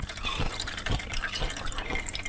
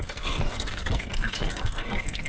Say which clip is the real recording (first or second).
first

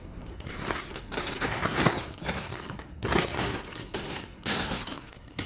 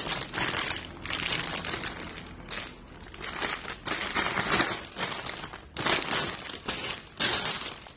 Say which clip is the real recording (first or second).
second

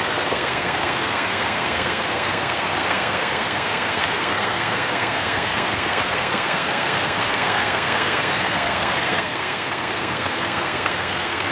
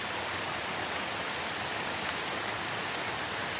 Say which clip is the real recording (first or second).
second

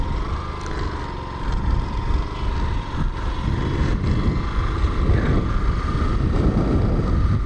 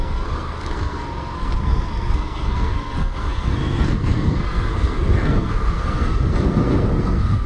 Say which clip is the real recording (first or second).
first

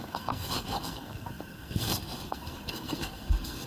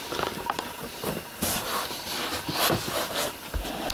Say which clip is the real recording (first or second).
second